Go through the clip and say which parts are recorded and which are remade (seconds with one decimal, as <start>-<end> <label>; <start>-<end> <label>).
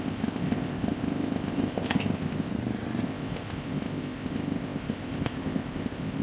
0.0-2.5 remade; 2.5-3.0 recorded; 3.0-6.2 remade